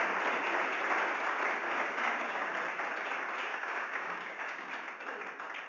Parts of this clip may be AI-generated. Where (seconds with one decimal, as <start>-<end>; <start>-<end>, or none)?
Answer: 1.6-2.5; 3.5-4.7